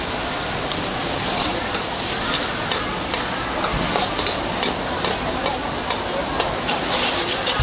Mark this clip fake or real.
real